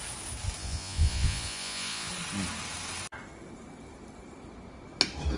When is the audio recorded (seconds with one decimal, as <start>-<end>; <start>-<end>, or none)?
0.0-0.6; 2.1-5.4